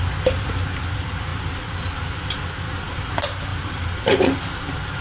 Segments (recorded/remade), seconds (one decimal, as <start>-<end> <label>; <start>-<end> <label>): 0.0-5.0 recorded